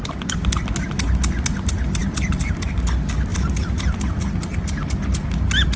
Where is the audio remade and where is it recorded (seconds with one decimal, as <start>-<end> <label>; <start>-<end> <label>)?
0.0-2.0 recorded; 2.0-2.7 remade; 2.7-3.3 recorded; 3.3-4.2 remade; 4.2-5.8 recorded